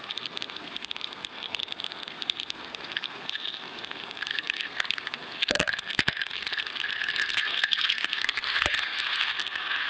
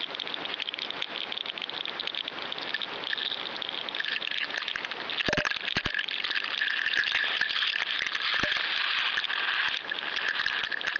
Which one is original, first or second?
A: second